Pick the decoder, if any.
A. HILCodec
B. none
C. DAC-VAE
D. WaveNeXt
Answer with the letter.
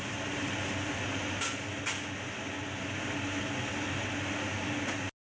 B